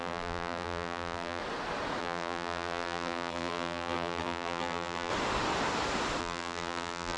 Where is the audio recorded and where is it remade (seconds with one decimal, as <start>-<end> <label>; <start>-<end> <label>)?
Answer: 0.0-1.4 remade; 1.4-2.0 recorded; 2.0-5.1 remade; 5.1-6.2 recorded; 6.2-7.2 remade